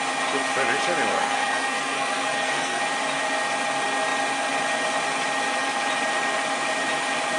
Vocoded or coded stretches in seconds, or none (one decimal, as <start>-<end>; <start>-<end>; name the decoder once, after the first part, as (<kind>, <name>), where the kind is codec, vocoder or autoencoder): 1.1-2.8 (codec, SNAC)